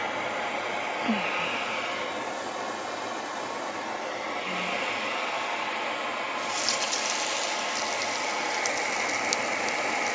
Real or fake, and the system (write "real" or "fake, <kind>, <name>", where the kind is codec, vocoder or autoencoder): real